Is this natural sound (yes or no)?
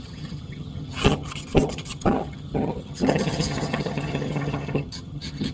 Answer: no